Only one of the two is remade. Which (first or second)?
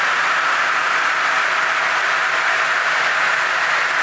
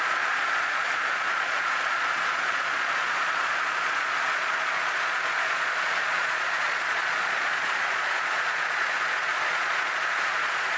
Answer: second